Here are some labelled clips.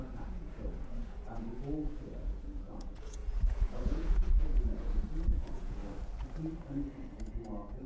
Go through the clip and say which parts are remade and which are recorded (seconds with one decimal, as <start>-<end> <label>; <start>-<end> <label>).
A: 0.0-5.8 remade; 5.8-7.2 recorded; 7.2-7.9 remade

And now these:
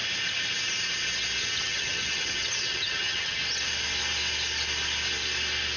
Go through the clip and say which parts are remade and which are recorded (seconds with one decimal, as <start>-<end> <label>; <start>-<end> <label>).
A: 0.0-1.4 recorded; 1.4-3.4 remade; 3.4-5.8 recorded

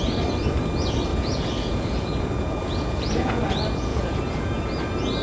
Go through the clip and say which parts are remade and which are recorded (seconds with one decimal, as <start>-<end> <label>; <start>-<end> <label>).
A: 0.0-1.1 recorded; 1.1-3.4 remade; 3.4-3.9 recorded; 3.9-4.8 remade; 4.8-5.2 recorded

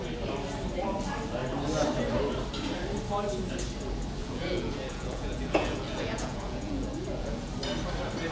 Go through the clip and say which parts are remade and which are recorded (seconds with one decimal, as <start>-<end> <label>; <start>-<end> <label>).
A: 0.0-4.2 recorded; 4.2-7.5 remade; 7.5-8.3 recorded

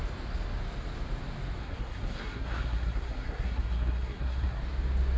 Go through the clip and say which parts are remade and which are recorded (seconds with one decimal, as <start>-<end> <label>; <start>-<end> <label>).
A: 0.0-1.6 recorded; 1.6-4.6 remade; 4.6-5.2 recorded

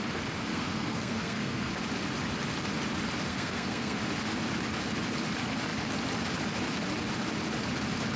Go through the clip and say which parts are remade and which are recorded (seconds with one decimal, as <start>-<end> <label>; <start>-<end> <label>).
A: 0.0-0.5 recorded; 0.5-1.7 remade; 1.7-3.3 recorded; 3.3-4.0 remade; 4.0-8.2 recorded

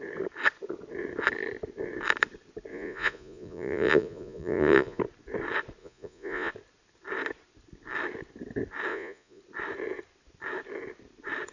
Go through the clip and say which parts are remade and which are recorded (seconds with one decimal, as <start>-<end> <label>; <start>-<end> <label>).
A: 0.0-2.7 recorded; 2.7-5.0 remade; 5.0-5.8 recorded; 5.8-6.5 remade; 6.5-8.9 recorded; 8.9-9.4 remade; 9.4-11.5 recorded